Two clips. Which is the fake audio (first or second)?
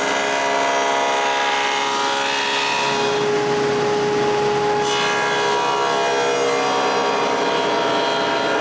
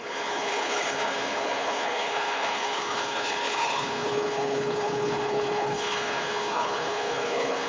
second